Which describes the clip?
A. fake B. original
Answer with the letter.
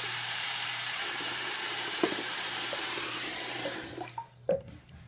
A